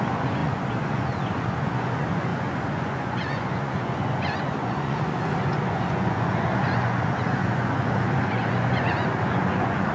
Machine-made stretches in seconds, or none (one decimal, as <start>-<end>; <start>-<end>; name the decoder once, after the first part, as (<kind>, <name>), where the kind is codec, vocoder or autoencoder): 0.0-9.9 (vocoder, Vocos)